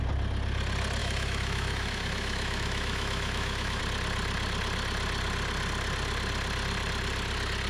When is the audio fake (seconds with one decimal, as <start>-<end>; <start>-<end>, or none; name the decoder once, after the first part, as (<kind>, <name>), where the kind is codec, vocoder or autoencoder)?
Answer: 1.0-3.8 (autoencoder, DAC-VAE)